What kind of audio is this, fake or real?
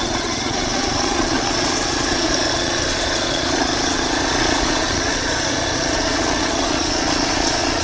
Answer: fake